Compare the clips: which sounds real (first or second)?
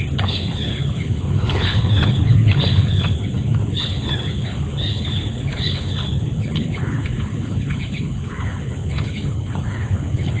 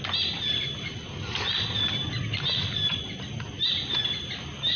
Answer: second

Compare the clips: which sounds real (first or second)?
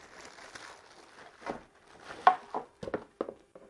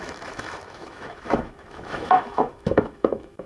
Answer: first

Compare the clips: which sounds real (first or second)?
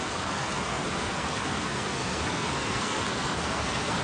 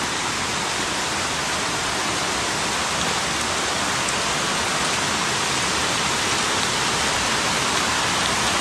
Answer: second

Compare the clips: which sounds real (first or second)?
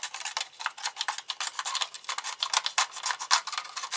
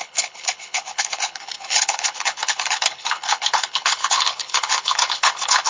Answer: first